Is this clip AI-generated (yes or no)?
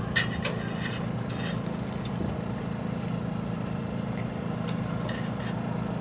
no